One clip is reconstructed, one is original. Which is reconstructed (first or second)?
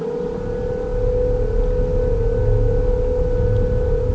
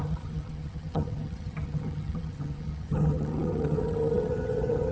second